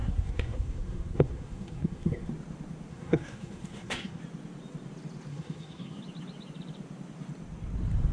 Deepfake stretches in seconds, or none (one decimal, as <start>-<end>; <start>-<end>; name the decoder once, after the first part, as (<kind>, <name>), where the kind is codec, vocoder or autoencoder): 0.0-2.3 (codec, SNAC); 2.9-4.2; 5.3-6.0